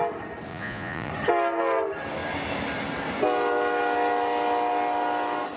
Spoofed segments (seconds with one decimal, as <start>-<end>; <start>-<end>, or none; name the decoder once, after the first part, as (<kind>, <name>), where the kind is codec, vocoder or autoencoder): 0.5-1.1 (vocoder, Vocos)